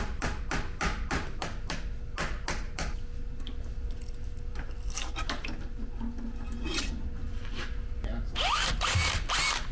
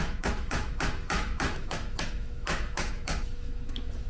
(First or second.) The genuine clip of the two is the first